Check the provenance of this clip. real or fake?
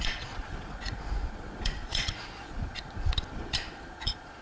fake